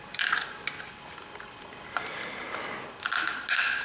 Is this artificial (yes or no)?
no